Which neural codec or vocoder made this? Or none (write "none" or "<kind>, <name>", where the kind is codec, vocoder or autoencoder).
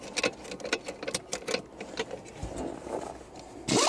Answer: none